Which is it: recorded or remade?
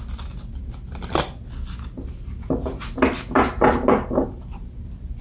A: recorded